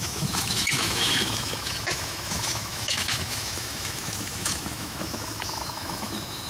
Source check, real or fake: fake